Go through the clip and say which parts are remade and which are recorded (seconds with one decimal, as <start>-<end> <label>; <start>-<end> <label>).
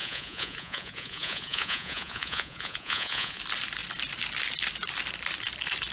0.0-3.4 remade; 3.4-5.9 recorded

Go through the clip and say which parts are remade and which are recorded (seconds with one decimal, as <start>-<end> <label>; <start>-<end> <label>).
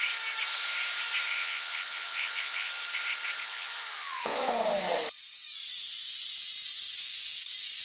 0.0-1.4 recorded; 1.4-2.7 remade; 2.7-3.4 recorded; 3.4-4.5 remade; 4.5-7.8 recorded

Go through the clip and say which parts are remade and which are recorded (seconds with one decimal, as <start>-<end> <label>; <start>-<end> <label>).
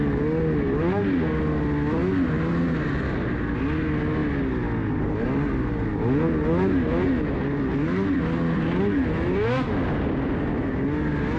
0.0-11.4 recorded